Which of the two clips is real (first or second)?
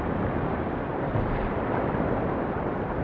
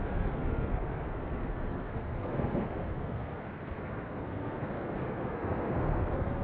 first